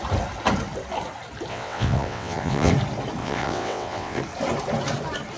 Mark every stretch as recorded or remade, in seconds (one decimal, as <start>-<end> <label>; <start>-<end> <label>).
0.0-1.5 recorded; 1.5-2.7 remade; 2.7-3.2 recorded; 3.2-4.2 remade; 4.2-5.4 recorded